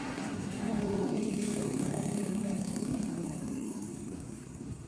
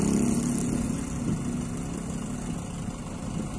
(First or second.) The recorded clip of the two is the second